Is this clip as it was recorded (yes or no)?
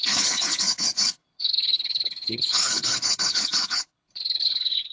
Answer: no